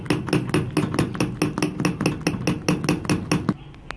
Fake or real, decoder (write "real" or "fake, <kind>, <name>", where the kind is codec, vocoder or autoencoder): real